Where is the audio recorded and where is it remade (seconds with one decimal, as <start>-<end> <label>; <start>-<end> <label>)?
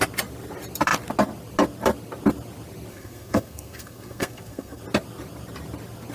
0.0-2.9 recorded; 2.9-4.8 remade; 4.8-6.1 recorded